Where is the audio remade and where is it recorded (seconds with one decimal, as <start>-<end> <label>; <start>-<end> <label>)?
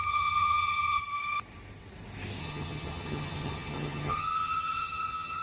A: 0.0-1.0 remade; 1.0-2.4 recorded; 2.4-5.4 remade